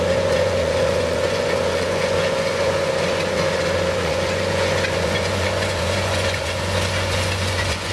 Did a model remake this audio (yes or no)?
yes